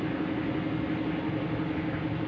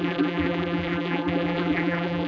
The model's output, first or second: second